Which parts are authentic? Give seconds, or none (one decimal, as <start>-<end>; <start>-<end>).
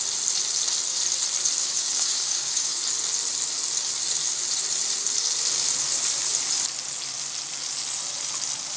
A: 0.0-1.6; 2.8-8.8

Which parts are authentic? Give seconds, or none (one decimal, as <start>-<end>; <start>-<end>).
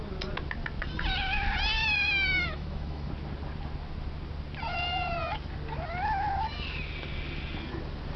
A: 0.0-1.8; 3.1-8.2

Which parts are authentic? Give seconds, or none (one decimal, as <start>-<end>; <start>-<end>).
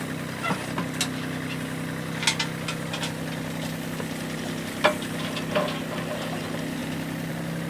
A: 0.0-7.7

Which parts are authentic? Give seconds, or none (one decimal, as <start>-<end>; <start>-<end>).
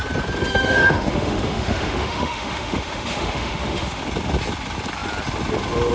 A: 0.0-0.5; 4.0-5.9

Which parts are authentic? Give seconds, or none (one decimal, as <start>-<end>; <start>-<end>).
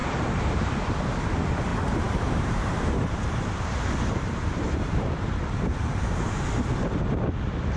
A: 0.7-1.7; 6.4-7.8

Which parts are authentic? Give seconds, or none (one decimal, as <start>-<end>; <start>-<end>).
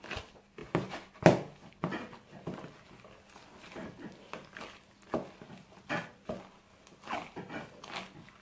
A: 0.0-8.4